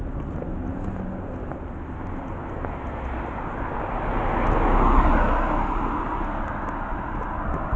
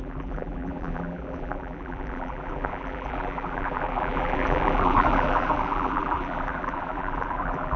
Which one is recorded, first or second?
first